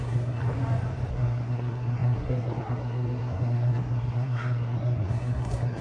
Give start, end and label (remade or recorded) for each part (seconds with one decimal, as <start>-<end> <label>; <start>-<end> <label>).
0.0-0.4 remade; 0.4-1.1 recorded; 1.1-5.8 remade